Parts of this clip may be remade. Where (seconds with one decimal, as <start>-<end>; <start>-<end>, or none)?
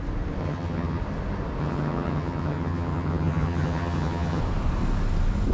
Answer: 0.4-1.0; 1.6-4.4